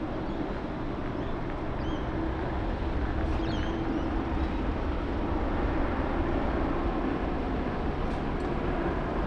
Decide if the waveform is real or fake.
real